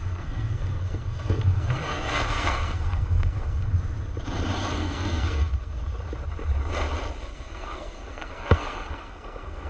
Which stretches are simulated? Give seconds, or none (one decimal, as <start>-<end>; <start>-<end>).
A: 0.0-3.7; 4.7-5.8; 7.2-9.7